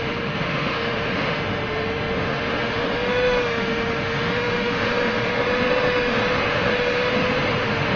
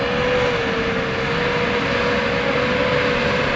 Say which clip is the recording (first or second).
second